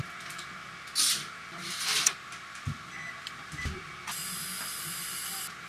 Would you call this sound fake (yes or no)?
no